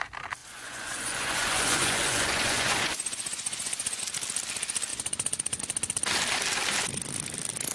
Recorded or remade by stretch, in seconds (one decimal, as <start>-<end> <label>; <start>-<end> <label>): 0.0-0.4 recorded; 0.4-4.0 remade; 4.0-4.9 recorded; 4.9-5.6 remade; 5.6-7.7 recorded